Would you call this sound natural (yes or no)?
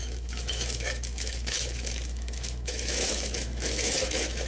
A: no